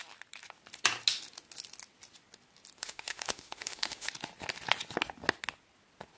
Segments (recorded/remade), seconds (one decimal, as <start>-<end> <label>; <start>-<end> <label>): 0.0-2.8 recorded; 2.8-4.1 remade; 4.1-6.2 recorded